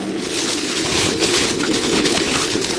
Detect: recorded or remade remade